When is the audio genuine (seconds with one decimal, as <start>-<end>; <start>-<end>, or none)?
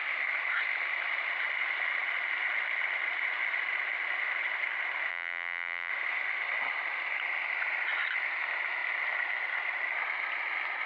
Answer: 0.0-5.1; 5.9-10.9